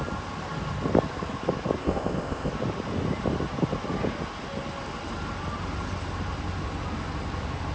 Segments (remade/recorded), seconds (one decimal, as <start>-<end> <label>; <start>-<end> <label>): 0.0-1.8 recorded; 1.8-2.5 remade; 2.5-7.7 recorded